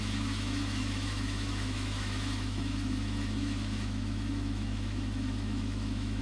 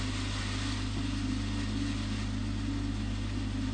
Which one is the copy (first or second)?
first